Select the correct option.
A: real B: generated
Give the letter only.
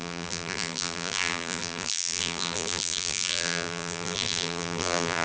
B